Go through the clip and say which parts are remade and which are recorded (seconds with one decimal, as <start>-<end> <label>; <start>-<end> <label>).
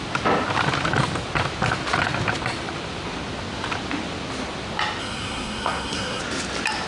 0.0-5.0 recorded; 5.0-6.2 remade; 6.2-6.9 recorded